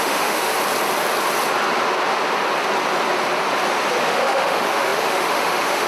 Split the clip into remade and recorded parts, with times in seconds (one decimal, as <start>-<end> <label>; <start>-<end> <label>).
0.0-0.5 remade; 0.5-4.0 recorded; 4.0-5.9 remade